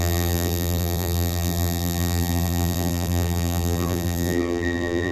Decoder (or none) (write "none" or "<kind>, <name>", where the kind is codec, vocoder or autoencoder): vocoder, BigVGAN v2